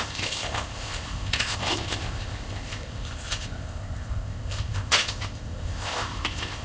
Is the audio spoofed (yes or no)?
yes